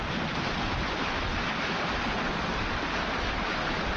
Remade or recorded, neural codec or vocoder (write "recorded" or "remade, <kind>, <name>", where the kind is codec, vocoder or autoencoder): recorded